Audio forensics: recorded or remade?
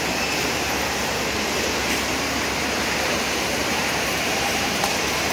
remade